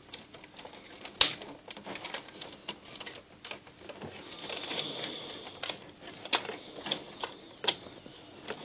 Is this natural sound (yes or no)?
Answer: yes